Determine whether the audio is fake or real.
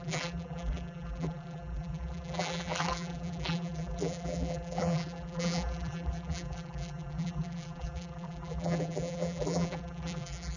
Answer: fake